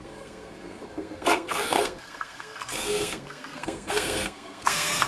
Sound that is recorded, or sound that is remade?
remade